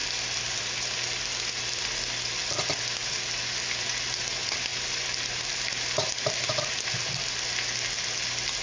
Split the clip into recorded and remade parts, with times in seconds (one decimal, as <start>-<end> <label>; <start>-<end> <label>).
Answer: 0.0-4.7 recorded; 4.7-7.1 remade; 7.1-8.6 recorded

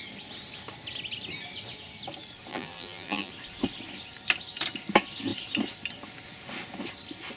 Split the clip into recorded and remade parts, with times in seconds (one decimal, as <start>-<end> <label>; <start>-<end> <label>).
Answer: 0.0-2.5 recorded; 2.5-3.3 remade; 3.3-7.4 recorded

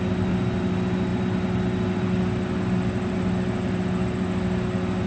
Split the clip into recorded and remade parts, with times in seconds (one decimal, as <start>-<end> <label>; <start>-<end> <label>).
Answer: 0.0-5.1 recorded

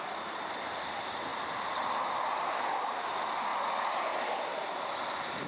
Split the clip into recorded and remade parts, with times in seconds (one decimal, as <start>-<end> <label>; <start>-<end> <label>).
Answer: 0.0-5.5 remade

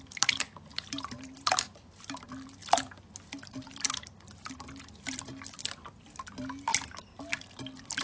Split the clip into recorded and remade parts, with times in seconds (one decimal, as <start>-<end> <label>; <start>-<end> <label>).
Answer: 0.0-2.6 remade; 2.6-5.6 recorded; 5.6-8.0 remade